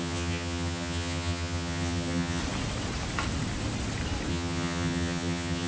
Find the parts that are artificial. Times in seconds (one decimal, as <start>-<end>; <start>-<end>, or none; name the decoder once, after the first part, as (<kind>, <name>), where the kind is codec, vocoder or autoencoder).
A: 0.0-2.4 (vocoder, HiFi-GAN); 4.3-5.7